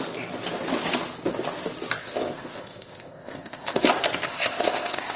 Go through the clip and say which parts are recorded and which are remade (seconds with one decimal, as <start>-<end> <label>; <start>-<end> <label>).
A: 0.0-2.0 recorded; 2.0-3.8 remade; 3.8-4.3 recorded; 4.3-5.2 remade